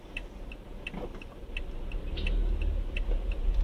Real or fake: real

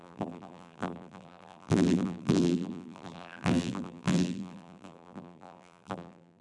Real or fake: fake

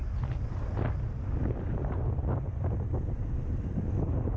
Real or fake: real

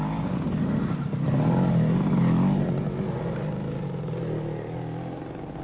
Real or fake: real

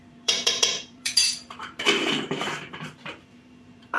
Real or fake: fake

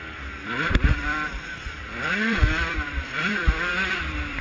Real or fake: fake